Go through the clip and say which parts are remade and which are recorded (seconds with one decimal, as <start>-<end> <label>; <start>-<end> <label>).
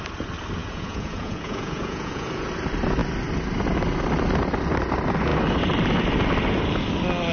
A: 0.0-0.6 recorded; 0.6-2.5 remade; 2.5-7.3 recorded